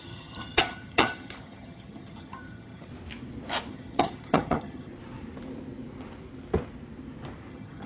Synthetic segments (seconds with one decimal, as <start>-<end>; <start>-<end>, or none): 0.0-2.9; 3.7-4.9; 7.5-7.9